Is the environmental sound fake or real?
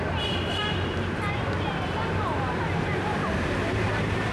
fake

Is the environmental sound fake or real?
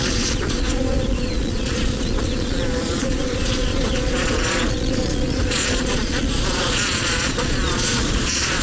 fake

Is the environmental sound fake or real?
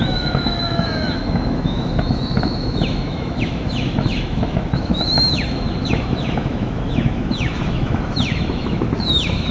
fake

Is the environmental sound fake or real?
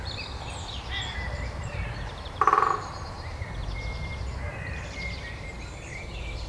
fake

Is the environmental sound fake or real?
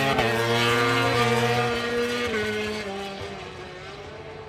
real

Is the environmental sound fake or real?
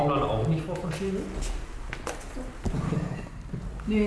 real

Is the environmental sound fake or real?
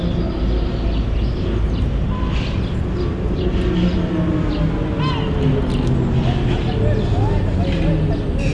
real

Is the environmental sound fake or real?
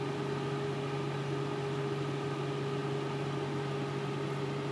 real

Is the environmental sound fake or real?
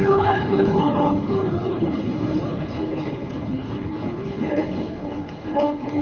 fake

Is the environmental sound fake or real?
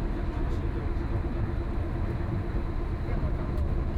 real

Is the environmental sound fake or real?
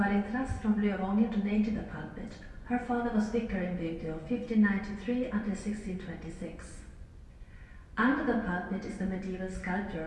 fake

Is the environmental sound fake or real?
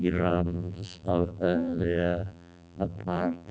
fake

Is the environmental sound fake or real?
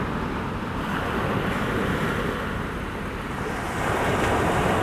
real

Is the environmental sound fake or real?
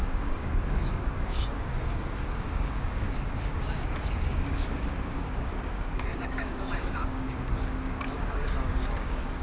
fake